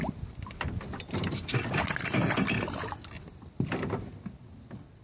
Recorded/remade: recorded